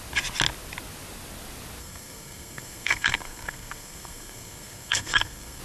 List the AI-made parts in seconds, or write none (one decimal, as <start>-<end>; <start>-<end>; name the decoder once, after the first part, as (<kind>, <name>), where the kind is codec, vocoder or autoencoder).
1.8-5.6 (codec, SNAC)